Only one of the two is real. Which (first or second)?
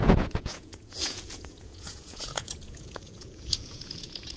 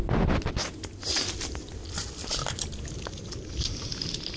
second